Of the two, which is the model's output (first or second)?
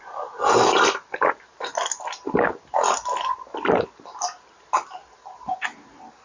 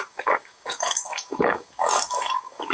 second